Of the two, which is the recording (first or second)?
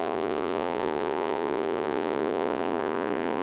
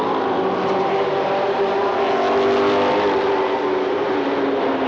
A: second